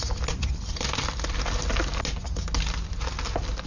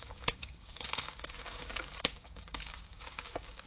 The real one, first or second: first